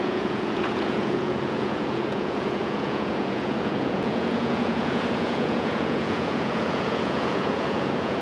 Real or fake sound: fake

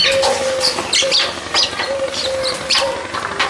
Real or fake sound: real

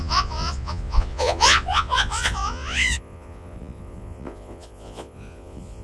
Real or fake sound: fake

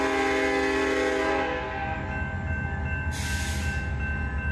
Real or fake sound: real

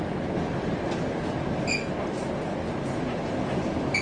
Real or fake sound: real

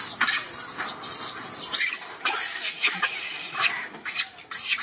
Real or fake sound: real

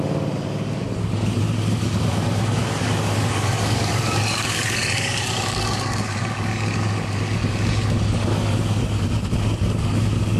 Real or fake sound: fake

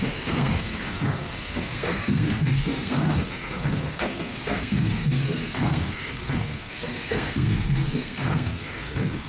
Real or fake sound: fake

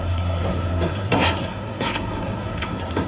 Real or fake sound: fake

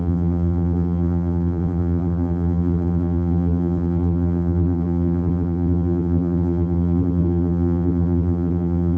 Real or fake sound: fake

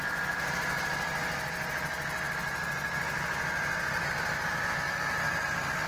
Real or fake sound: real